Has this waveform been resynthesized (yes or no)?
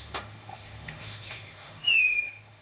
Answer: yes